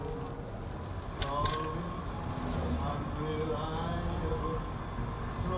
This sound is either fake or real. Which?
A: real